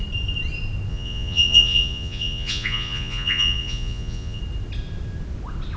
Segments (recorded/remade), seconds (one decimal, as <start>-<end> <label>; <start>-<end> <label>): 0.0-0.9 recorded; 0.9-4.4 remade; 4.4-5.8 recorded